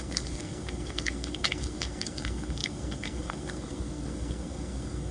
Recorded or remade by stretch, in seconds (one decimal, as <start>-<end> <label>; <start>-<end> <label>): 0.0-5.1 remade